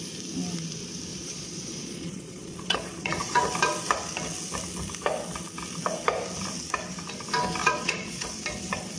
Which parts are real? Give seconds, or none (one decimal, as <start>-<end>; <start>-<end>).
0.0-1.1; 3.4-7.6; 8.3-9.0